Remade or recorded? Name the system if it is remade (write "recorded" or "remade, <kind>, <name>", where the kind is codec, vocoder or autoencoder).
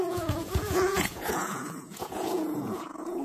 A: remade, vocoder, Vocos